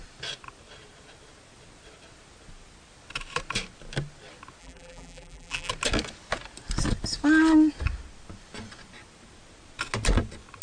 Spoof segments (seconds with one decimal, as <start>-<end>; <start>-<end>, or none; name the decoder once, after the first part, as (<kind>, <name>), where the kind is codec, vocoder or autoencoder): 4.6-5.7 (vocoder, BigVGAN v2)